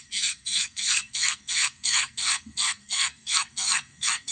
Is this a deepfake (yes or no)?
yes